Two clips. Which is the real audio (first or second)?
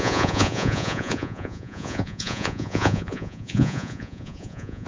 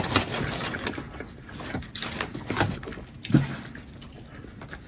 second